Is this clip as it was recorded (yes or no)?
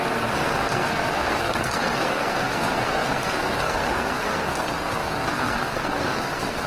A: no